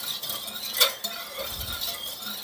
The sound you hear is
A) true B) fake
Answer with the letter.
A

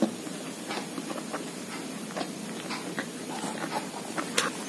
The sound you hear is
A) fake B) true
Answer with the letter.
B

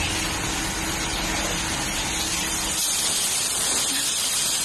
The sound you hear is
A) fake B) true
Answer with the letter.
B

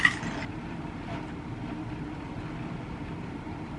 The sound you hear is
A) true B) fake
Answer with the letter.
A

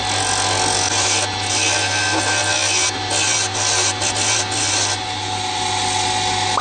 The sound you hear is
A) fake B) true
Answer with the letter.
B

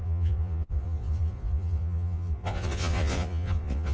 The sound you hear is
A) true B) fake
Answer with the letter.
B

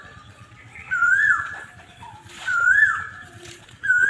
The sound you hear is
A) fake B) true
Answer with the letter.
A